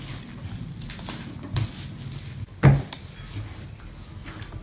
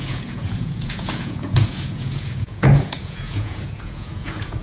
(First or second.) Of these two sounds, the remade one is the second